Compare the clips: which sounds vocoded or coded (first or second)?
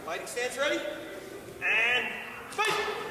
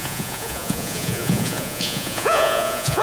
second